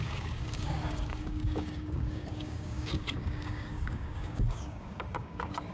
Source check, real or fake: fake